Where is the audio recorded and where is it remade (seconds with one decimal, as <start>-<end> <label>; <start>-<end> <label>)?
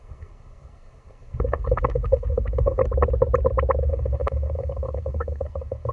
0.0-2.8 remade; 2.8-3.8 recorded; 3.8-5.9 remade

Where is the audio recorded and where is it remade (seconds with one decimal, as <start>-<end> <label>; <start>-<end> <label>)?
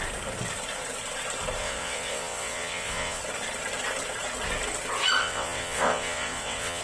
0.0-1.6 recorded; 1.6-3.2 remade; 3.2-5.2 recorded; 5.2-6.8 remade